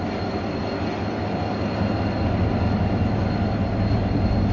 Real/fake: real